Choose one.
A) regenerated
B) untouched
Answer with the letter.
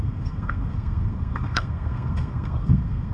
A